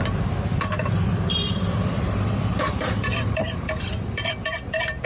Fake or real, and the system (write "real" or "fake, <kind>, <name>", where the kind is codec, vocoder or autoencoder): fake, vocoder, BigVGAN v2